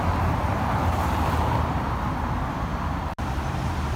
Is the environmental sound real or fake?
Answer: real